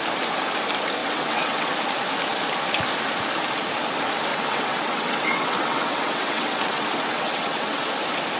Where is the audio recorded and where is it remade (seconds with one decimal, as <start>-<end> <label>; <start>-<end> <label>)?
0.0-1.0 recorded; 1.0-1.7 remade; 1.7-4.3 recorded; 4.3-7.9 remade; 7.9-8.4 recorded